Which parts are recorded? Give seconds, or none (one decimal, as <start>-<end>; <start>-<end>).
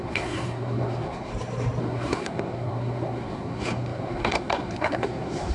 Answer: 1.3-1.8